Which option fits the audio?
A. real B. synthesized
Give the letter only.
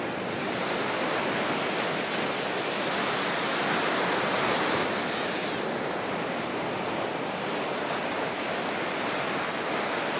A